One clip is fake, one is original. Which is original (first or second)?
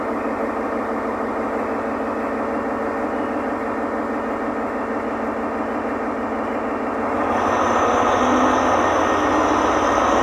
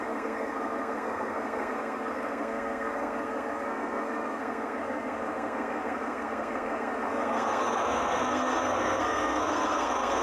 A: first